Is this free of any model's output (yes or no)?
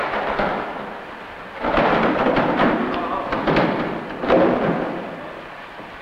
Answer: yes